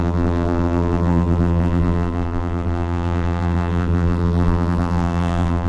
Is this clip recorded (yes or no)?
no